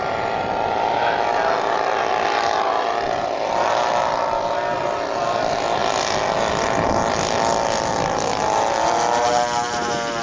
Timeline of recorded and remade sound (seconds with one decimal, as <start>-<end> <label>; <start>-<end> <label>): 0.0-10.2 recorded